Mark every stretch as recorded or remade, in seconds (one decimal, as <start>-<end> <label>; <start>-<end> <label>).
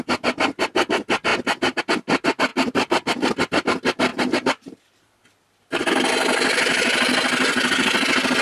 0.0-2.5 recorded; 2.5-3.3 remade; 3.3-4.1 recorded; 4.1-5.2 remade; 5.2-8.4 recorded